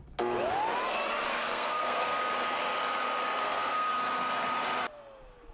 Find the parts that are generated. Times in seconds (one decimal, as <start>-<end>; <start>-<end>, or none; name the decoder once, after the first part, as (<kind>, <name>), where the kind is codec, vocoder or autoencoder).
1.3-2.2 (codec, SNAC); 3.4-3.9